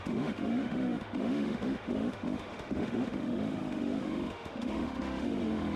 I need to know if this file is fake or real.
fake